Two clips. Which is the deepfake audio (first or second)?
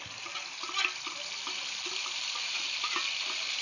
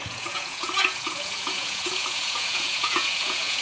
second